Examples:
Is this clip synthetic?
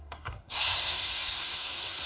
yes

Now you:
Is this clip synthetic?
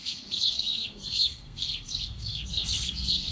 yes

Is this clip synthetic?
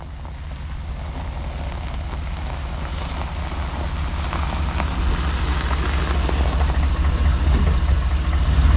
no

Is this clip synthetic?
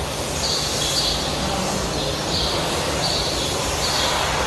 no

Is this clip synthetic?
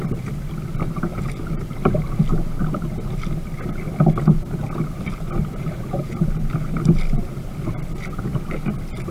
no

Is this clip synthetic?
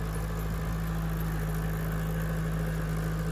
no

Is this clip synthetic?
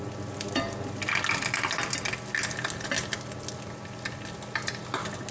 no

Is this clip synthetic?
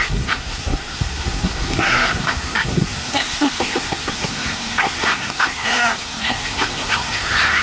yes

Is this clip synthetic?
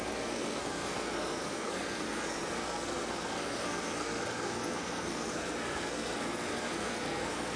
yes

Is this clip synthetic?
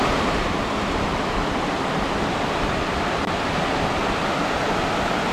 no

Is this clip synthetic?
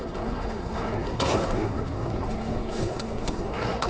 yes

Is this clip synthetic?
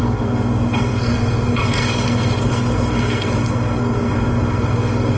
yes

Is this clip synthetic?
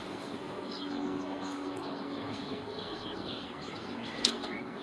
yes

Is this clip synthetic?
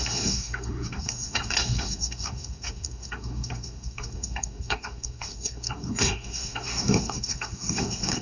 yes